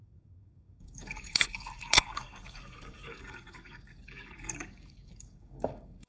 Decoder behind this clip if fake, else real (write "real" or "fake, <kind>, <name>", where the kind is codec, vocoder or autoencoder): fake, codec, DAC